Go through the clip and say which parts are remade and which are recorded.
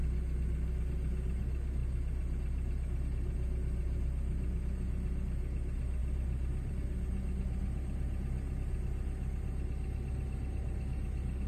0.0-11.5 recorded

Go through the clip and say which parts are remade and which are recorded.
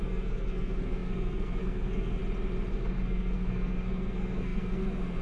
0.0-2.2 remade; 2.2-2.7 recorded; 2.7-5.2 remade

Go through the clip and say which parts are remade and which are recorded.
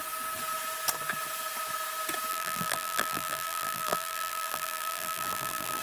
0.0-2.3 recorded; 2.3-5.8 remade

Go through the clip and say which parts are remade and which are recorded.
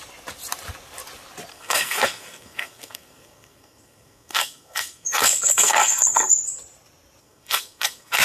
0.0-1.5 recorded; 1.5-6.3 remade; 6.3-7.2 recorded; 7.2-8.2 remade